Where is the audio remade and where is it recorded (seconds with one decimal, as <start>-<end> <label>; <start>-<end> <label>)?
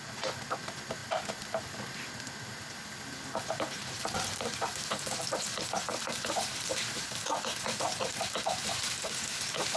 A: 0.0-9.8 recorded